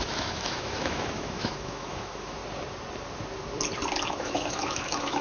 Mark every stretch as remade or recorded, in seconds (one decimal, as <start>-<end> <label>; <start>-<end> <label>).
0.0-2.4 remade; 2.4-4.1 recorded; 4.1-5.2 remade